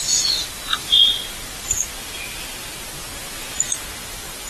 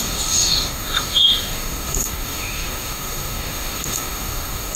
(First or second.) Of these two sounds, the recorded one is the first